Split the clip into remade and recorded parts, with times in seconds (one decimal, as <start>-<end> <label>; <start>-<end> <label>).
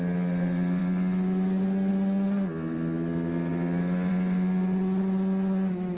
0.0-6.0 recorded